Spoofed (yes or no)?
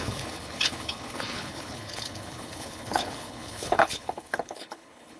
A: yes